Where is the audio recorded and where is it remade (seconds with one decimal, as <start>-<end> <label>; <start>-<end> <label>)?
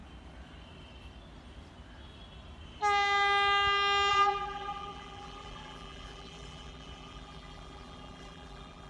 0.0-4.1 recorded; 4.1-8.9 remade